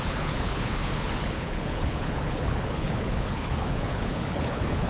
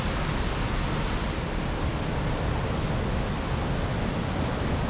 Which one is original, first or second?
second